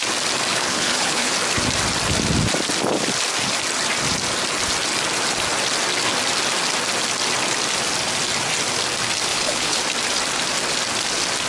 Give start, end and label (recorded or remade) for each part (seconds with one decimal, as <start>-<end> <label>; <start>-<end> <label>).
0.0-0.5 recorded; 0.5-1.3 remade; 1.3-9.3 recorded; 9.3-9.8 remade; 9.8-11.5 recorded